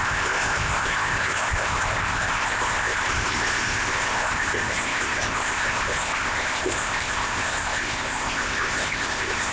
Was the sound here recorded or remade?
remade